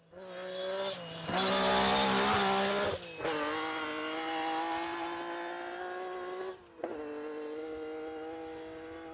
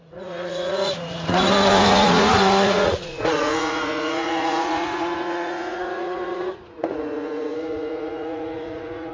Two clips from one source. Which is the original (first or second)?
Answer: first